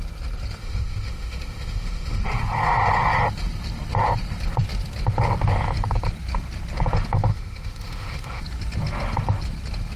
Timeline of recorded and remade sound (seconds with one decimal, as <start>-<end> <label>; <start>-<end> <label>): 0.0-0.6 recorded; 0.6-2.2 remade; 2.2-7.3 recorded; 7.3-8.4 remade; 8.4-10.0 recorded